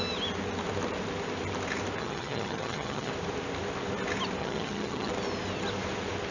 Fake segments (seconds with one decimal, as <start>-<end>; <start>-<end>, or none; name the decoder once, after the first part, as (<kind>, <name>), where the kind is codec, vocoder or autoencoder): 2.0-3.1 (vocoder, HiFi-GAN); 4.4-5.1